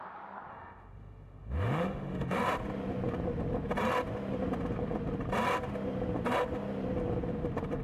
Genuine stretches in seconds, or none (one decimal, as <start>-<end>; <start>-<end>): 0.0-0.5; 2.4-7.8